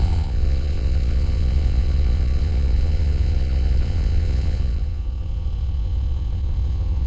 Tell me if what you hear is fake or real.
fake